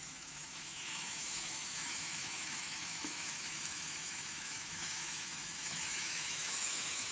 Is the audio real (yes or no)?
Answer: no